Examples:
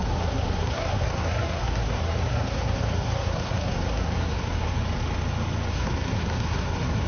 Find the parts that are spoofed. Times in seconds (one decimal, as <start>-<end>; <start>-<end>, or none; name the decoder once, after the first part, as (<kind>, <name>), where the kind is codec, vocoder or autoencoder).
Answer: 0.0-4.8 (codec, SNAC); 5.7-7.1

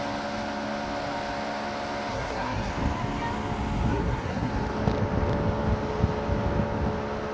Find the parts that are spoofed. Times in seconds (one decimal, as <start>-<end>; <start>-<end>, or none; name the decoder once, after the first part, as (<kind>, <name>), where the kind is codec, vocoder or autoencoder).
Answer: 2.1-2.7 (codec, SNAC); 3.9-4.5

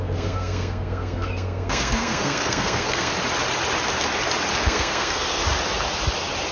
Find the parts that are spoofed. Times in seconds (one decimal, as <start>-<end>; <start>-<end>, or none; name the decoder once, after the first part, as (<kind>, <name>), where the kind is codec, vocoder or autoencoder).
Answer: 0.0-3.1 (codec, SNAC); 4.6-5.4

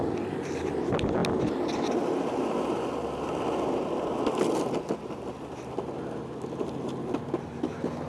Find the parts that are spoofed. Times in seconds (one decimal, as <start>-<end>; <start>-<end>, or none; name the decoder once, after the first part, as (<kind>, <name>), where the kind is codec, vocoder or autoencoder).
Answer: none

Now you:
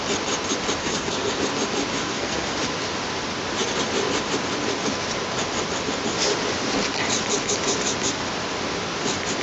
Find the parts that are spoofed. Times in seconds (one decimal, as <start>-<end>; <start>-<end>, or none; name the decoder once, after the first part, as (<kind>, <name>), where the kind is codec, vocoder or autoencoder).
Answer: 0.8-1.4 (codec, SNAC); 2.0-2.6

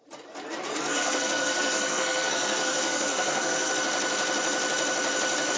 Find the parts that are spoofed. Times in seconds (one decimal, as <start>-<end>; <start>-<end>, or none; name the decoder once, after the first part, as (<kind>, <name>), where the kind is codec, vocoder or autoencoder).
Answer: 0.9-3.7 (codec, SNAC)

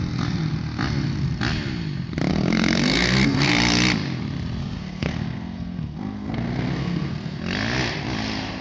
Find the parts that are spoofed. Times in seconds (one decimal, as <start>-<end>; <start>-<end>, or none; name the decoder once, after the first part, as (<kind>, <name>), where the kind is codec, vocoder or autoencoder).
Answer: 2.3-3.5 (codec, SNAC); 4.6-7.4